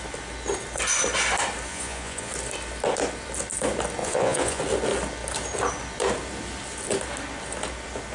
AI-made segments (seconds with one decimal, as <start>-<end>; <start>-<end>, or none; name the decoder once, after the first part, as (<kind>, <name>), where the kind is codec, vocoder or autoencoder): 1.7-2.3 (vocoder, Vocos); 4.0-4.6